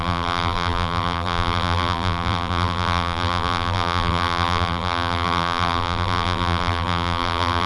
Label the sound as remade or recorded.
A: remade